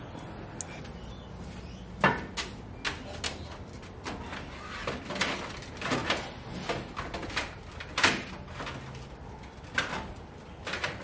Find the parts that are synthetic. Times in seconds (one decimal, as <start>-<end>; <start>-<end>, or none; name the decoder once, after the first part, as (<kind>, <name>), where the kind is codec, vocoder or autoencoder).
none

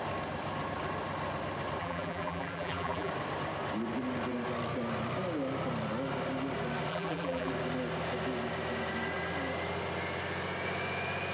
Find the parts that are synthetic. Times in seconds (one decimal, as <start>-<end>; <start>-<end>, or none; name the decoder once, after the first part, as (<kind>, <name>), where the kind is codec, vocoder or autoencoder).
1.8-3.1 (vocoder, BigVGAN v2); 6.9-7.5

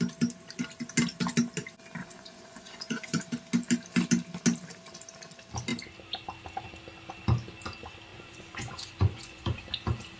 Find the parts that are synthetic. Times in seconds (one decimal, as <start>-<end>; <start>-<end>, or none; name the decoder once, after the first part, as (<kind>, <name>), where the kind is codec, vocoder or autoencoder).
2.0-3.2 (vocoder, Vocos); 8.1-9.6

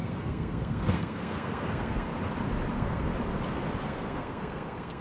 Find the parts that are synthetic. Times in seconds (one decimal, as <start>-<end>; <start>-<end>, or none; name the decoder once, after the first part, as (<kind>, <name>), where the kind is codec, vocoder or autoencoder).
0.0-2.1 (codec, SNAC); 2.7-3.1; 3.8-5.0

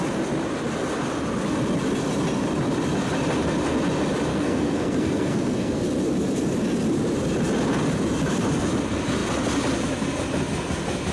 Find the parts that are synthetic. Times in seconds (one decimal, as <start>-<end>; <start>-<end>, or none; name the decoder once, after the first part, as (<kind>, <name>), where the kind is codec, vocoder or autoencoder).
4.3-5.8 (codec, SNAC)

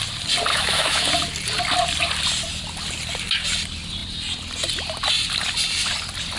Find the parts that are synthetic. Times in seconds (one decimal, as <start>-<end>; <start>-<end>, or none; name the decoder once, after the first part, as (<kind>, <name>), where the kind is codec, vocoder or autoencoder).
0.5-1.1 (autoencoder, DAC-VAE)

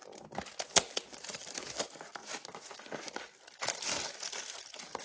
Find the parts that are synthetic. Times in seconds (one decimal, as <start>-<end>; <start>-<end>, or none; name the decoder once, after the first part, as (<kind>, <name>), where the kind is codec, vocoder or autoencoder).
none

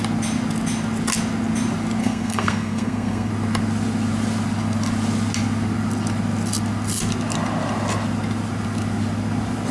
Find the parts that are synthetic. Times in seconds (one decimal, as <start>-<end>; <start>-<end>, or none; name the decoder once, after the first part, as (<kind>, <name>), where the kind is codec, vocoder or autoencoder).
2.0-3.3 (codec, SNAC)